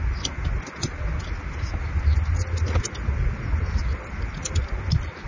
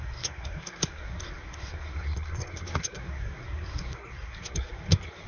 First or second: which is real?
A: first